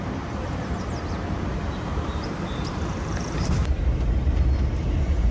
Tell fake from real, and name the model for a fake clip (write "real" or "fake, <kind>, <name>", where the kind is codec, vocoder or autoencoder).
fake, vocoder, BigVGAN v2